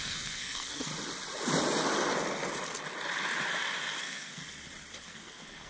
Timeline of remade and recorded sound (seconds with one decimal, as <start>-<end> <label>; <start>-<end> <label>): 0.0-0.9 remade; 0.9-4.0 recorded; 4.0-4.4 remade; 4.4-5.0 recorded; 5.0-5.7 remade